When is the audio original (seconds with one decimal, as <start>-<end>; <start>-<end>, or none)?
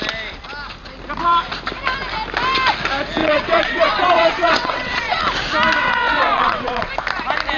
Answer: 0.0-3.2; 5.2-5.8; 6.9-7.6